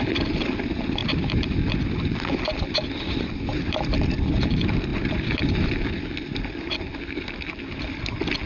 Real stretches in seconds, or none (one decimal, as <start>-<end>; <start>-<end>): 1.0-4.0

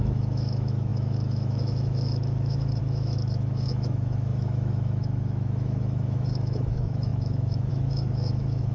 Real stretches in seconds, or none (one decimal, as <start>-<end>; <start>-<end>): none

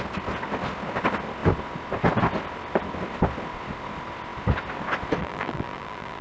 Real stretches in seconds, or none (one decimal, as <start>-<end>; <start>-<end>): 0.0-5.2

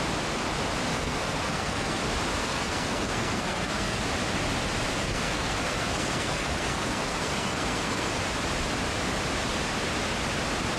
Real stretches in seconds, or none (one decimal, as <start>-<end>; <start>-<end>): 0.0-0.9; 2.0-2.4; 4.0-5.0; 8.2-10.8

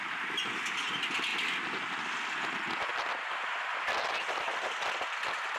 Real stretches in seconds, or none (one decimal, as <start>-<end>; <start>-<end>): 0.0-5.6

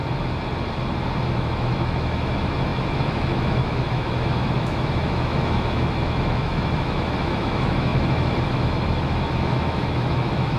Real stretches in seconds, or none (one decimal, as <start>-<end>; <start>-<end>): 0.0-1.3

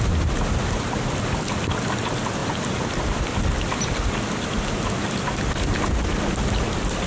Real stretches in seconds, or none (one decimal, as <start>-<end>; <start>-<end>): 0.0-7.1